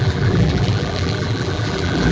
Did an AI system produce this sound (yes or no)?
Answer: yes